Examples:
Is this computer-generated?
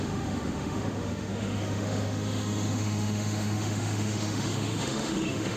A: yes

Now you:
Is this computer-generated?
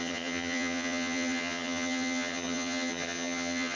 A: yes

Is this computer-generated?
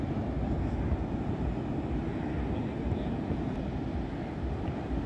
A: no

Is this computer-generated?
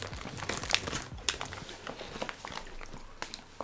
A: no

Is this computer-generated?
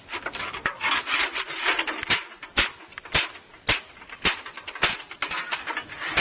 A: no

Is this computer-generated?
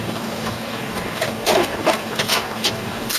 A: yes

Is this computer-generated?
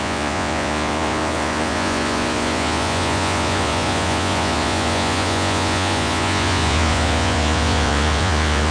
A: yes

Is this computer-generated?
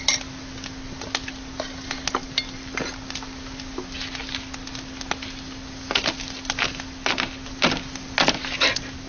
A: no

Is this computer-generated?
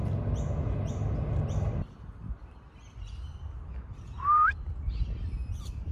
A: no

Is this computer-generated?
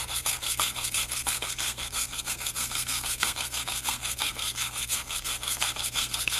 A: yes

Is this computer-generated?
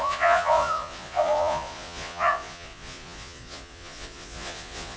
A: yes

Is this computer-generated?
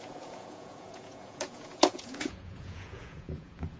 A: yes